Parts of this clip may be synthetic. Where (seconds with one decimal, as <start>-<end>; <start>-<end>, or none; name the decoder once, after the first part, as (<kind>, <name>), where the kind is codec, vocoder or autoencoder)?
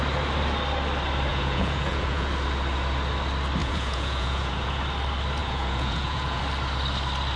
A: 1.3-2.3 (vocoder, Vocos); 3.6-4.8; 5.4-6.4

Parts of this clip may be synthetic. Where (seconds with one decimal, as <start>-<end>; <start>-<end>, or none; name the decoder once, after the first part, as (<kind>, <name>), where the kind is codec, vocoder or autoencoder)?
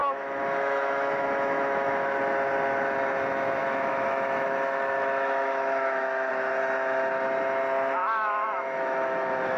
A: 0.0-2.2 (autoencoder, DAC-VAE); 3.6-6.3; 8.0-9.6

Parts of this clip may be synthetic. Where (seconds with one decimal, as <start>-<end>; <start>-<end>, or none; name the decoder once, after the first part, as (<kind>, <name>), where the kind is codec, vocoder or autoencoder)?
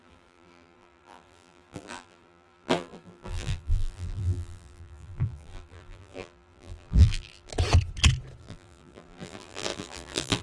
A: 0.0-7.5 (vocoder, BigVGAN v2); 8.4-10.4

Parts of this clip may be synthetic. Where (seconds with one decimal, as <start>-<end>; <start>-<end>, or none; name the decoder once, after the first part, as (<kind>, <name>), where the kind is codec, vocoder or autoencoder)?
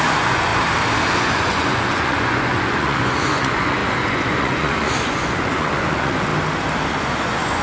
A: 0.0-0.5 (vocoder, Vocos); 1.2-6.3; 6.9-7.6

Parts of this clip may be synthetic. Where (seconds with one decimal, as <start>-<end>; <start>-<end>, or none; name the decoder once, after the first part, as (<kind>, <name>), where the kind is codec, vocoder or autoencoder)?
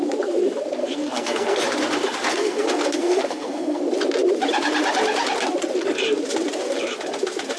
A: 0.8-1.6 (codec, SNAC); 2.3-3.8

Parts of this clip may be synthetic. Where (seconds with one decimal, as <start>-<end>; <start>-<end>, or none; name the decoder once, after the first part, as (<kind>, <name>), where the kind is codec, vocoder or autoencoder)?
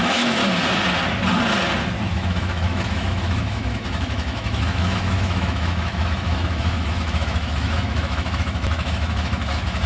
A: 0.0-0.4 (autoencoder, DAC-VAE); 2.1-9.9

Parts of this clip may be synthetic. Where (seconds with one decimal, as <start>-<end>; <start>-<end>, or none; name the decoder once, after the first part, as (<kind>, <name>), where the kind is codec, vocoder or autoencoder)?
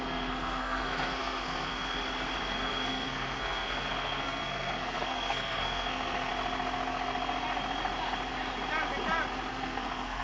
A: 0.0-2.0 (codec, SNAC); 2.5-6.3; 9.5-10.2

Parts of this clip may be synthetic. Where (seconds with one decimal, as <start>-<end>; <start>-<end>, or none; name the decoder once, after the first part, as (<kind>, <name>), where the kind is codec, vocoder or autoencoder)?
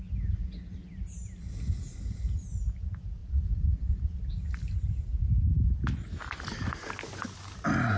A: none